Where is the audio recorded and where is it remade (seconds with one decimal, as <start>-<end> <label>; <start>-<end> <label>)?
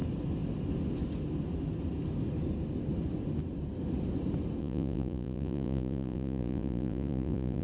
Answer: 0.0-4.6 recorded; 4.6-7.6 remade